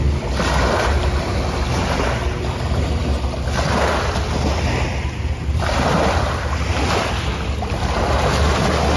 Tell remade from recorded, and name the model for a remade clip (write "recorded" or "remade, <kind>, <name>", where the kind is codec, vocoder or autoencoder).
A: recorded